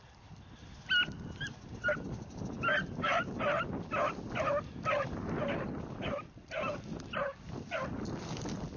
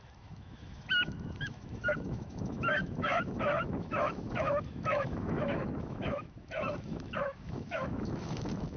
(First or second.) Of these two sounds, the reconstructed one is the second